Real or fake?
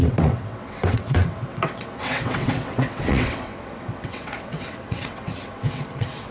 fake